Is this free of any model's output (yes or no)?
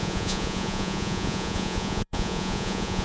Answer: no